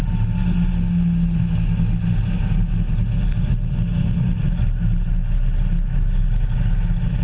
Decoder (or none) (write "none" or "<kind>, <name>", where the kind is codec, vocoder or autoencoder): none